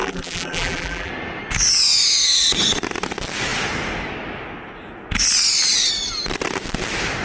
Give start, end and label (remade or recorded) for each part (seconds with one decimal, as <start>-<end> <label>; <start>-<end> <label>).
0.0-1.1 remade; 1.1-7.2 recorded